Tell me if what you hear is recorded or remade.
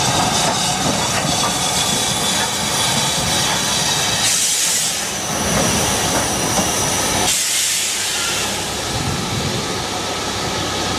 recorded